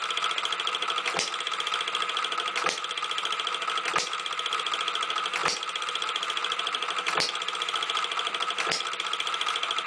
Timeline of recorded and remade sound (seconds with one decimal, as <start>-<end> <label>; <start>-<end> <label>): 0.0-9.9 recorded